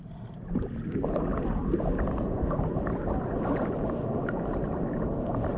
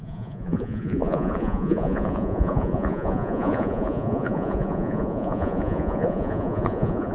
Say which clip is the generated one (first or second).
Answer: second